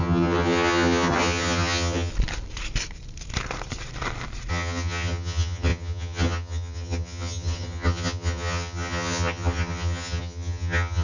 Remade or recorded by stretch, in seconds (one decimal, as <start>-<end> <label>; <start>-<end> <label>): 0.0-2.1 remade; 2.1-4.5 recorded; 4.5-11.0 remade